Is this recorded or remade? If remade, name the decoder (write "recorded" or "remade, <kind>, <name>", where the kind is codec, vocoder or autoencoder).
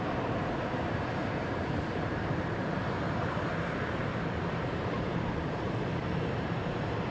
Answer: remade, vocoder, BigVGAN v2